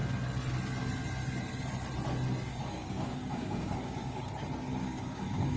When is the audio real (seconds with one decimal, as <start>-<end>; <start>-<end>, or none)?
0.0-2.5; 4.3-4.8